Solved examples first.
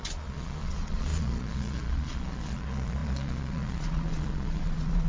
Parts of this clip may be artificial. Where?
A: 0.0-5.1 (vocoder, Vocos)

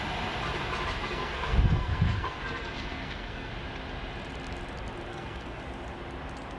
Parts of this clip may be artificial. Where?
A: 1.0-3.5 (codec, SNAC); 5.1-5.6